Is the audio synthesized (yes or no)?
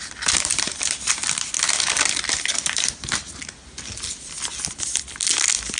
no